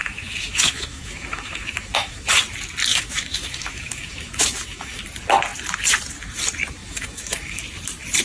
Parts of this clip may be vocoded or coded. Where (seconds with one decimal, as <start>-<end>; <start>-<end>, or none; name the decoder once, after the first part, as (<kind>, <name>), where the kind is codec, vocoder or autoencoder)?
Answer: 0.0-2.3 (autoencoder, DAC-VAE); 2.9-5.0; 6.8-7.6